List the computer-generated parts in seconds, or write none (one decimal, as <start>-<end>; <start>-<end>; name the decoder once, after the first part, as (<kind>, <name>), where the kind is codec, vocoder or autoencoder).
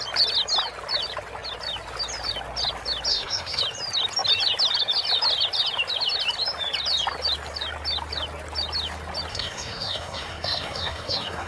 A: 3.1-3.6 (codec, SNAC); 9.3-11.5